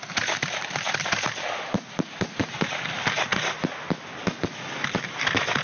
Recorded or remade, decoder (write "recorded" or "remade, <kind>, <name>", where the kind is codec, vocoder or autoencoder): recorded